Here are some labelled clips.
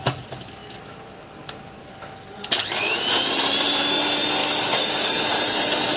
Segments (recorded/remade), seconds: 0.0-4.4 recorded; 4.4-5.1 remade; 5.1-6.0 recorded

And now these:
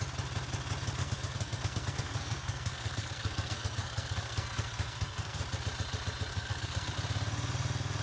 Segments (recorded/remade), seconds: 0.0-1.0 recorded; 1.0-5.4 remade; 5.4-6.3 recorded; 6.3-6.9 remade; 6.9-8.0 recorded

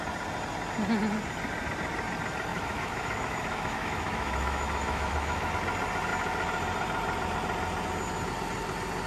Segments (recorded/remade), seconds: 0.0-2.5 recorded; 2.5-5.5 remade; 5.5-9.1 recorded

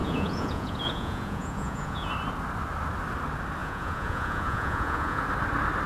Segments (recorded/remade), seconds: 0.0-2.1 remade; 2.1-3.6 recorded; 3.6-5.2 remade; 5.2-5.9 recorded

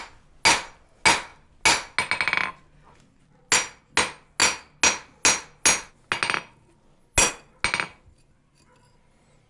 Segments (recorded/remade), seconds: 0.0-9.5 recorded

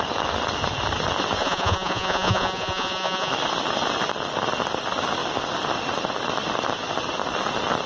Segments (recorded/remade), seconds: 0.0-1.4 recorded; 1.4-3.3 remade; 3.3-7.9 recorded